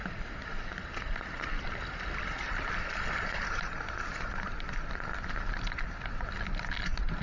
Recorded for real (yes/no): yes